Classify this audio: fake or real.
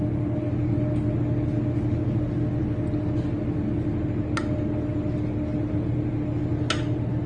real